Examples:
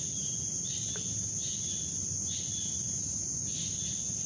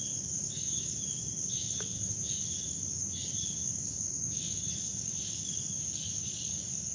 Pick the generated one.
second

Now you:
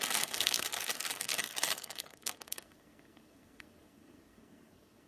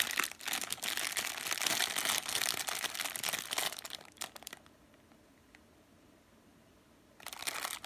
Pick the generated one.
first